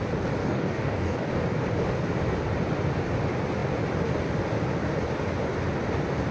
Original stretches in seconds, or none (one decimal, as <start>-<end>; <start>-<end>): 0.0-0.4; 1.3-6.3